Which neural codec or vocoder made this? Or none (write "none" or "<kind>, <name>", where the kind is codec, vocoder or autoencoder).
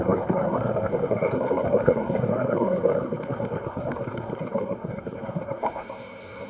codec, SNAC